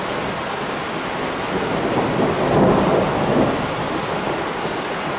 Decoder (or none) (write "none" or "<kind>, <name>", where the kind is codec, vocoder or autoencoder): none